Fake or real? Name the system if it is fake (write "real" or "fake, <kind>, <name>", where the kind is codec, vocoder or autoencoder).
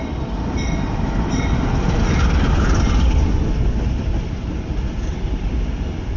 real